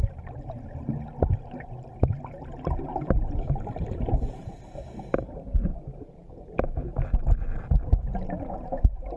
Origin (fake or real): real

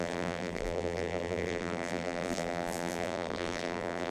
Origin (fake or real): fake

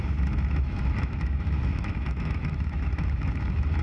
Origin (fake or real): fake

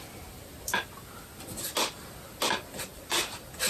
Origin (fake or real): real